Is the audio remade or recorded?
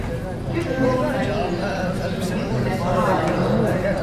recorded